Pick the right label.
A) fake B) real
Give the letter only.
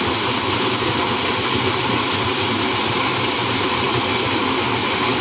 B